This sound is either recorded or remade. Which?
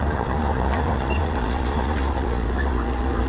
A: remade